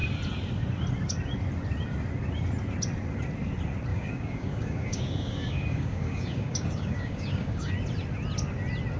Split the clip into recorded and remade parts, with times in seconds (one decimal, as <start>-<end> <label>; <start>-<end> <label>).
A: 0.0-3.9 recorded; 3.9-7.7 remade; 7.7-9.0 recorded